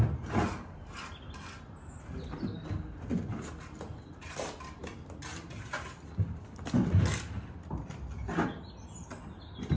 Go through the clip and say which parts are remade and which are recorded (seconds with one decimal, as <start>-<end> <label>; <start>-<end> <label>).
0.0-9.8 recorded